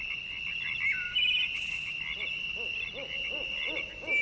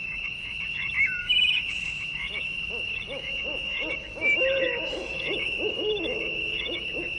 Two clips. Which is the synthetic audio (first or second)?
second